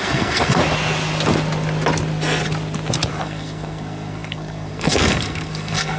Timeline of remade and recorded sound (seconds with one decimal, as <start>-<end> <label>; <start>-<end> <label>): 0.0-0.6 remade; 0.6-3.1 recorded; 3.1-6.0 remade